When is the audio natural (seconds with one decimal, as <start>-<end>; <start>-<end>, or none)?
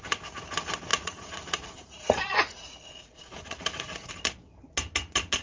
0.0-0.9; 4.1-5.4